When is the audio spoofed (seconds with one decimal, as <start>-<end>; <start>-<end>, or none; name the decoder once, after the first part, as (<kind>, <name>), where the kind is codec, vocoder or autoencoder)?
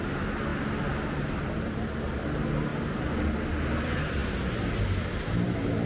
none